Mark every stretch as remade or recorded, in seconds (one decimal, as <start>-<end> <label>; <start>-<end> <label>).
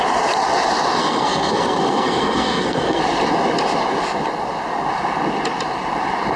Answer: 0.0-1.0 recorded; 1.0-3.0 remade; 3.0-6.4 recorded